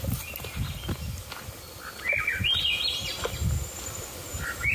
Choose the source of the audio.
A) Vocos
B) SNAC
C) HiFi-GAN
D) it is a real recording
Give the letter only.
D